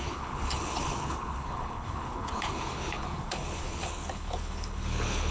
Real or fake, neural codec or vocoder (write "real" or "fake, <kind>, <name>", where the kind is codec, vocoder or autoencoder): fake, codec, HILCodec